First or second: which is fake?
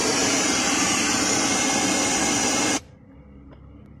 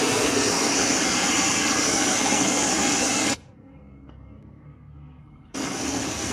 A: second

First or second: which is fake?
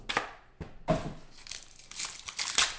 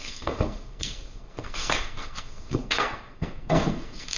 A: second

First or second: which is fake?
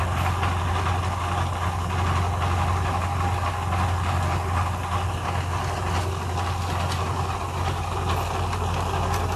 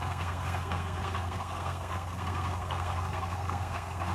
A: second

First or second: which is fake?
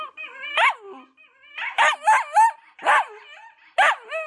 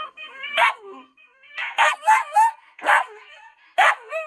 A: second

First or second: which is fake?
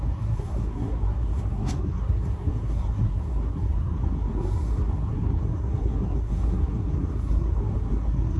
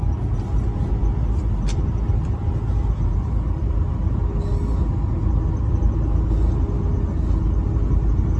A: first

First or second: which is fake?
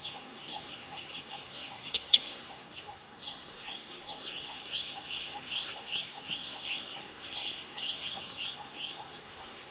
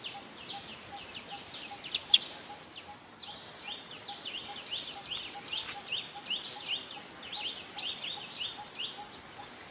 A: first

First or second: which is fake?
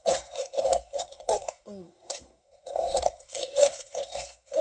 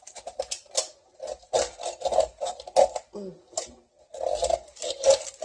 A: first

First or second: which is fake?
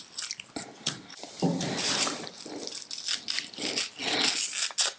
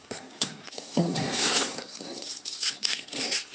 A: second